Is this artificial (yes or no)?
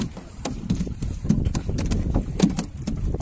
yes